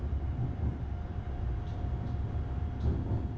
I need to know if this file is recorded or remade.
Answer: recorded